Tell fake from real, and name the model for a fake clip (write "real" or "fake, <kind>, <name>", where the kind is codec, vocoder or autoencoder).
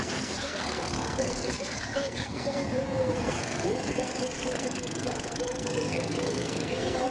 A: fake, codec, SNAC